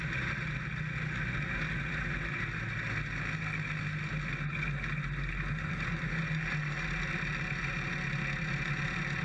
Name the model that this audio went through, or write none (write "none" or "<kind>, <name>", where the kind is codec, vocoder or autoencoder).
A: none